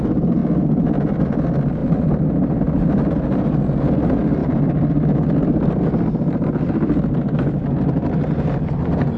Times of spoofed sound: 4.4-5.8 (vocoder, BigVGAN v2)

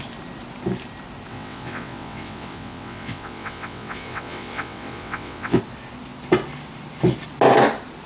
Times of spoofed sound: 1.3-5.6 (vocoder, WaveNeXt)

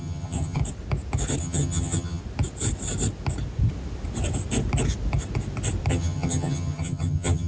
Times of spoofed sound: 0.0-0.6 (vocoder, HiFi-GAN); 1.4-2.2; 5.9-7.5

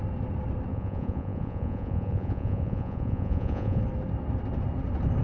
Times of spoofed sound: 0.7-3.8 (vocoder, Vocos)

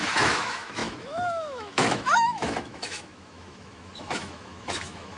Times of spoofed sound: 0.0-5.2 (autoencoder, DAC-VAE)